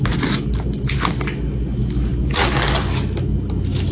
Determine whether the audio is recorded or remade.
recorded